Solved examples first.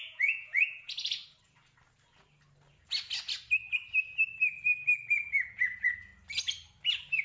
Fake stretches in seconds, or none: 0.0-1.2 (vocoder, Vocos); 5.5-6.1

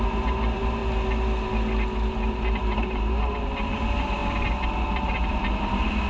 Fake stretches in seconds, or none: 0.0-0.8 (vocoder, BigVGAN v2); 2.1-4.2; 5.3-6.1

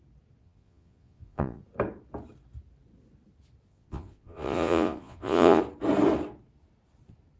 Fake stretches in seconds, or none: 0.4-1.6 (vocoder, Vocos); 3.7-5.6

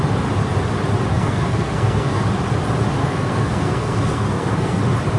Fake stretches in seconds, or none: 1.1-2.2 (codec, SNAC); 3.0-4.8

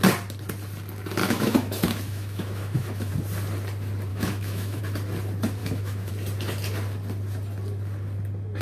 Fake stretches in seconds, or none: 1.2-3.1 (autoencoder, DAC-VAE); 4.1-4.8; 5.6-6.1

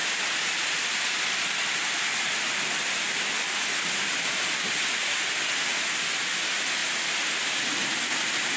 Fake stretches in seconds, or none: none

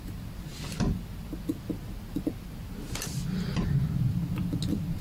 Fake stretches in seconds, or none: none